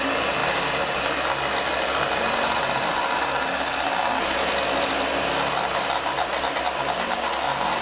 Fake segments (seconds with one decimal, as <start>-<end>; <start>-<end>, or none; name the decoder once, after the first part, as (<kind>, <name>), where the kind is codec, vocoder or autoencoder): none